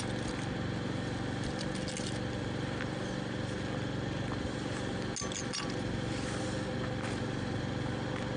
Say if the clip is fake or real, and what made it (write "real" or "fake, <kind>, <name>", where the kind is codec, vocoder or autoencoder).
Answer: real